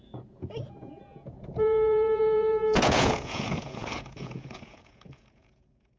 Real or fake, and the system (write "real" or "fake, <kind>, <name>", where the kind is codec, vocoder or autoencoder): fake, vocoder, Vocos